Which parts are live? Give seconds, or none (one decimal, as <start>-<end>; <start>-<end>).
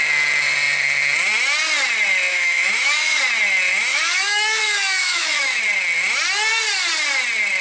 0.0-2.3; 3.2-3.9; 5.6-7.6